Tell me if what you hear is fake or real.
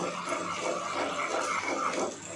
real